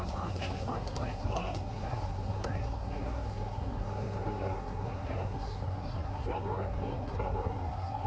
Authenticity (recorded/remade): remade